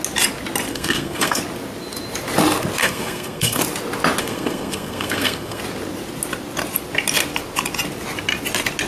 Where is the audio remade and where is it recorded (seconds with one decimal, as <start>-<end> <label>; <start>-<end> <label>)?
0.0-0.7 recorded; 0.7-1.4 remade; 1.4-2.8 recorded; 2.8-3.6 remade; 3.6-4.2 recorded; 4.2-5.6 remade; 5.6-8.9 recorded

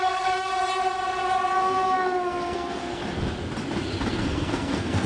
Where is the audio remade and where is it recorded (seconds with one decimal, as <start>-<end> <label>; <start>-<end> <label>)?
0.0-0.5 remade; 0.5-1.6 recorded; 1.6-3.0 remade; 3.0-4.1 recorded; 4.1-5.1 remade

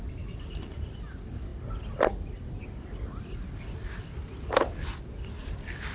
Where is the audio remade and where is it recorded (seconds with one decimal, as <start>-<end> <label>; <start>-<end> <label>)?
0.0-5.9 recorded

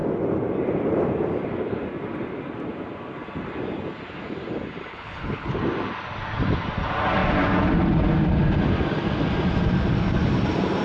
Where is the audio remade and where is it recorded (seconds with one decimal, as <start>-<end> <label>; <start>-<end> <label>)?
0.0-4.9 recorded; 4.9-5.6 remade; 5.6-10.8 recorded

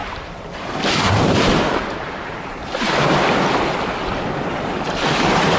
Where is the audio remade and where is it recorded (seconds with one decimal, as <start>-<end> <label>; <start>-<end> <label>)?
0.0-3.3 remade; 3.3-5.6 recorded

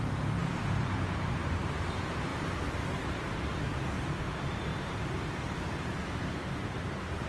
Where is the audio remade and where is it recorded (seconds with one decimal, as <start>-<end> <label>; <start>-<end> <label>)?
0.0-2.3 remade; 2.3-4.2 recorded; 4.2-7.3 remade